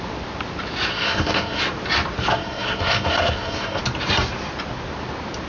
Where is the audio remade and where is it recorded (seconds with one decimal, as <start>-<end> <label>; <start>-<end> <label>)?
0.0-0.9 recorded; 0.9-1.6 remade; 1.6-2.3 recorded; 2.3-3.8 remade; 3.8-5.5 recorded